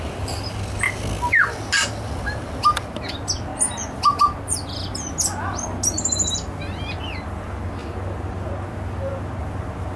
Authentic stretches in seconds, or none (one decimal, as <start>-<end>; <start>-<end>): 0.0-10.0